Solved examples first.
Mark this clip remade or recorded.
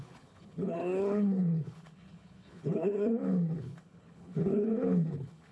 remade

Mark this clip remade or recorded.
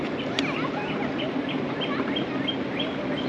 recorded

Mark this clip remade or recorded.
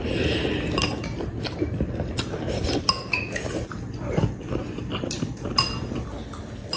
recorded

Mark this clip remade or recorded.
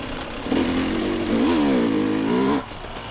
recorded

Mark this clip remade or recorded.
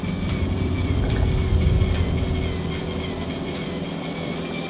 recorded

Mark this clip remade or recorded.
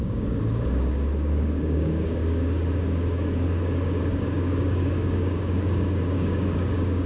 remade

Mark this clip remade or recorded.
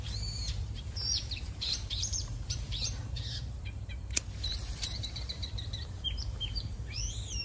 remade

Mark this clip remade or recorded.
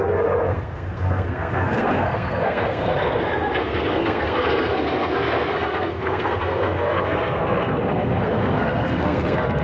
remade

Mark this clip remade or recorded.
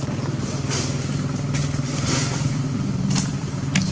recorded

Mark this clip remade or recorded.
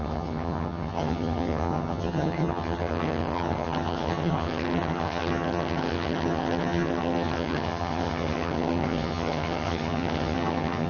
remade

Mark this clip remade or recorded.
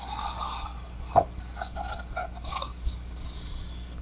remade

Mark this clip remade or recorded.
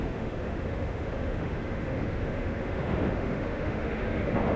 remade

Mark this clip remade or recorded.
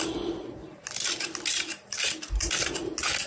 recorded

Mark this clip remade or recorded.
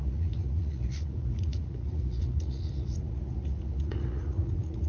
remade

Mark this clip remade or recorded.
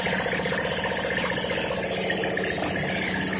recorded